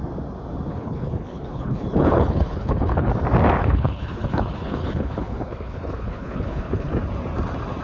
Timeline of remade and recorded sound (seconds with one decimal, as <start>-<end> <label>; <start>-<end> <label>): 0.0-0.7 recorded; 0.7-3.1 remade; 3.1-3.6 recorded; 3.6-6.9 remade; 6.9-7.8 recorded